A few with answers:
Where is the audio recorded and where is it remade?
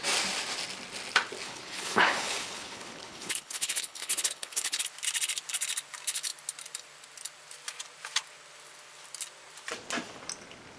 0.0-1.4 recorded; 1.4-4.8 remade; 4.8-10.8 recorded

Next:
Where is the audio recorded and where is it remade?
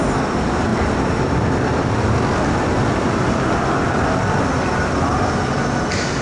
0.0-6.2 recorded